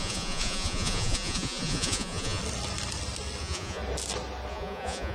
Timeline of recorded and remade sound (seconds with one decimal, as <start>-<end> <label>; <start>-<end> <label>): 0.0-2.4 remade; 2.4-3.4 recorded; 3.4-3.8 remade; 3.8-4.5 recorded; 4.5-5.1 remade